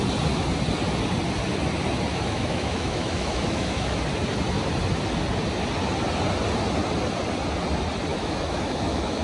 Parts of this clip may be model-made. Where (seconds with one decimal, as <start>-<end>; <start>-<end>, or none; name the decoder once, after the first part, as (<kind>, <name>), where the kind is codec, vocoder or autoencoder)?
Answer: 2.1-4.0 (autoencoder, DAC-VAE); 8.1-9.2